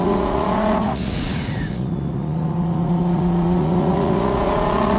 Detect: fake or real fake